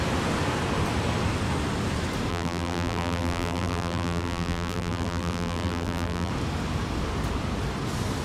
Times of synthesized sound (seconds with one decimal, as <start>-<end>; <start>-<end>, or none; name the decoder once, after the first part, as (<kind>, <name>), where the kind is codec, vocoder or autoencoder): 2.3-6.3 (vocoder, BigVGAN v2)